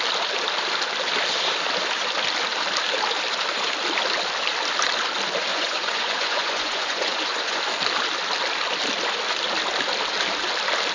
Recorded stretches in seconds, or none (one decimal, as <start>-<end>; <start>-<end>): 0.0-5.5; 7.6-10.9

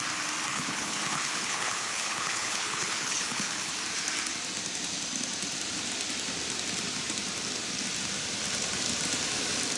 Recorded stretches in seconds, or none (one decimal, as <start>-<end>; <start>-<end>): 0.0-0.5; 3.7-9.8

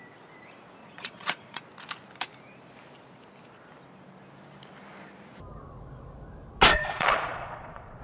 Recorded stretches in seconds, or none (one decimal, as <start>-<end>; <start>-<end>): 0.0-0.8; 1.6-6.7

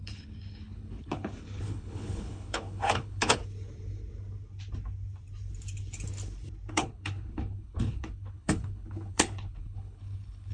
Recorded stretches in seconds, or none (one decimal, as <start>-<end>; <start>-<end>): 3.4-6.7

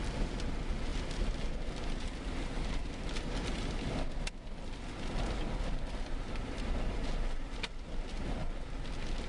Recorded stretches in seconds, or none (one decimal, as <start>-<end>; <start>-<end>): 0.0-0.9; 2.9-9.3

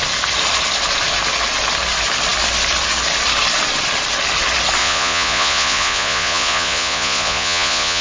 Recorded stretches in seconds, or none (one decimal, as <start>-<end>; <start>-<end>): 0.0-4.8

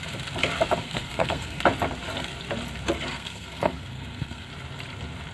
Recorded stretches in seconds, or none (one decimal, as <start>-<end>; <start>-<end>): 0.0-0.8; 1.6-3.1; 4.5-5.3

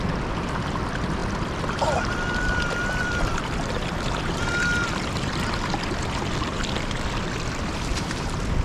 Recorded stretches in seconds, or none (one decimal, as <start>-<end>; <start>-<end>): 0.0-8.6